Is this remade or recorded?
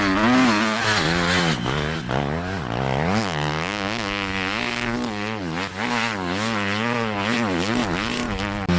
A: recorded